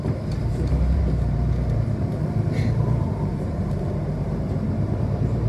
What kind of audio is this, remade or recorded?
remade